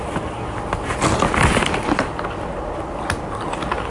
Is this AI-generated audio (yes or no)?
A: no